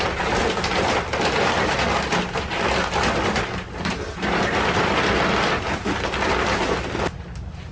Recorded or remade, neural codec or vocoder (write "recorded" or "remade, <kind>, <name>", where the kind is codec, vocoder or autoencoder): recorded